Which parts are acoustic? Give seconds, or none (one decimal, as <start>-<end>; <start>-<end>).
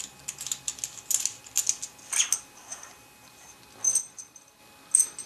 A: 0.0-2.7; 3.5-4.0; 4.6-5.3